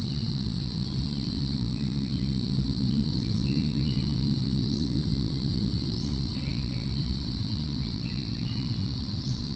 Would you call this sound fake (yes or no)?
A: yes